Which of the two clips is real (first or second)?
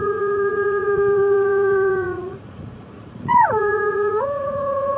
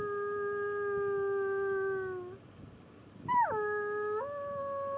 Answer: second